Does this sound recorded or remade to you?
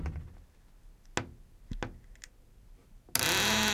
recorded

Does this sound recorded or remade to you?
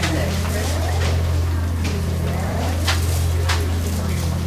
remade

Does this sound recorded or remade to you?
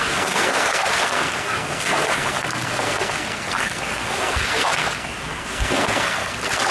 remade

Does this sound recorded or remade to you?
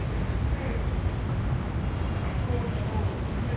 recorded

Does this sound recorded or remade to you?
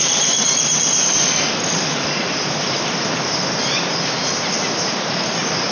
remade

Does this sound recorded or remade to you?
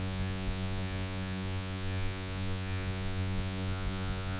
remade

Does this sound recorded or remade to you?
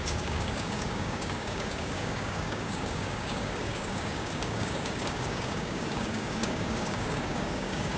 remade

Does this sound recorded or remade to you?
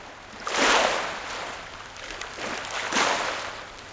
recorded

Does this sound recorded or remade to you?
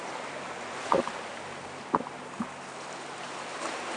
recorded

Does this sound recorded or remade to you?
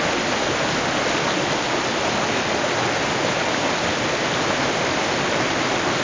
recorded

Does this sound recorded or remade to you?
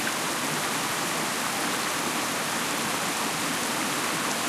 recorded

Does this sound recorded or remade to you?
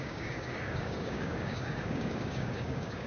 remade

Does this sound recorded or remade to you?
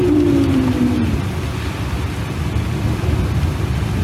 recorded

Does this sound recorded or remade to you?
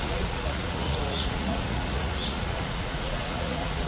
remade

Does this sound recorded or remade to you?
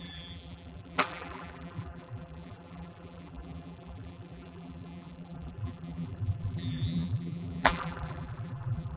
remade